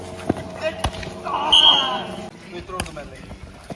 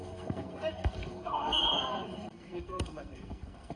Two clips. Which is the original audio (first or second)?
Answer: first